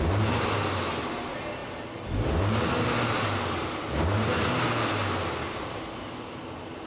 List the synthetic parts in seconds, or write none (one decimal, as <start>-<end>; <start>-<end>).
none